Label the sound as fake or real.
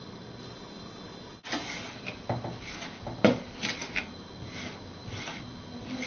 real